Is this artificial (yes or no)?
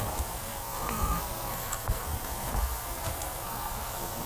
yes